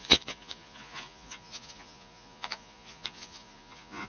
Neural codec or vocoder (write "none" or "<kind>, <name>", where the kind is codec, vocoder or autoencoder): vocoder, Vocos